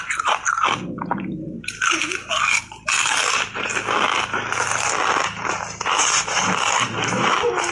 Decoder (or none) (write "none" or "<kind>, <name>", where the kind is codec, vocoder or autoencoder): none